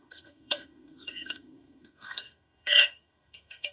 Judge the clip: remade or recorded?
remade